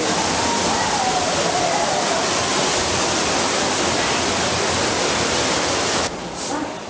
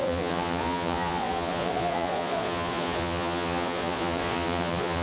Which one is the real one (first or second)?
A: first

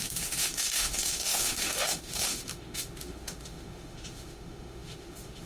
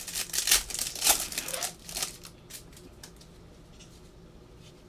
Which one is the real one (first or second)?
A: second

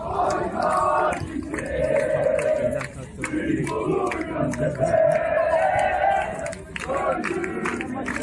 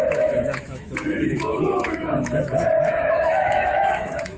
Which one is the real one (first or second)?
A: first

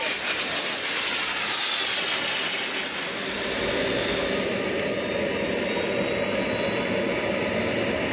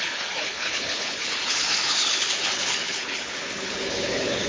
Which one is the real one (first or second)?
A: first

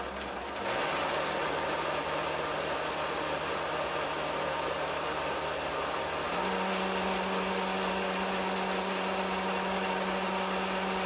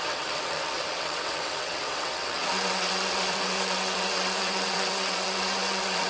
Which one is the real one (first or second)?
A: first